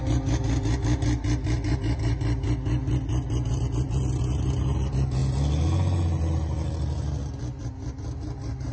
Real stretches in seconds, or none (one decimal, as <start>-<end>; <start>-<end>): 0.0-8.7